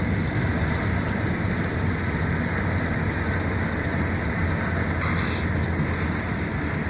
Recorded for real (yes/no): yes